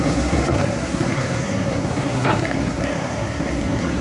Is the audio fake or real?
fake